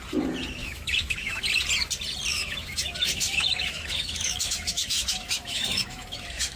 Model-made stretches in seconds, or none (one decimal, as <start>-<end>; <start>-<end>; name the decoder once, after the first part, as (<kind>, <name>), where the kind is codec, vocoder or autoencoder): 0.6-1.4 (autoencoder, DAC-VAE); 2.3-6.6